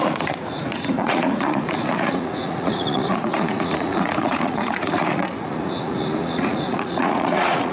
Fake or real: fake